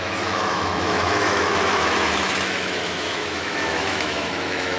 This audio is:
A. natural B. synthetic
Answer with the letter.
B